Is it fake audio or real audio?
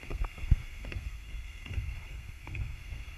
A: fake